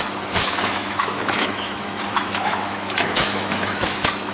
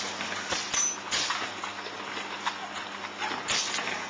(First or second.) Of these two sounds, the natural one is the second